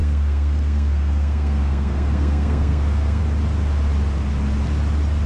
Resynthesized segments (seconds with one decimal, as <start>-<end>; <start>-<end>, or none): 0.0-3.2